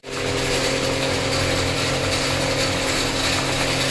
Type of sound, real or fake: real